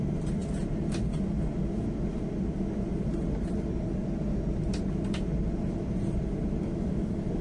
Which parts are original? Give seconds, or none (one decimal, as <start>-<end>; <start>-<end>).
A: 0.0-7.4